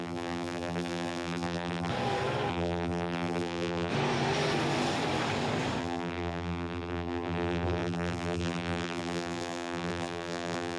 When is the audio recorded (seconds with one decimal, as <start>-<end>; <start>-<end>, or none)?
1.9-2.5; 3.9-5.8